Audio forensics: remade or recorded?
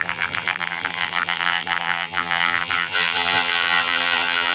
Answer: remade